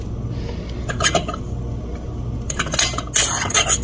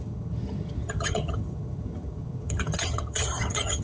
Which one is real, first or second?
first